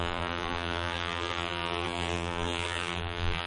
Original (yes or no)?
no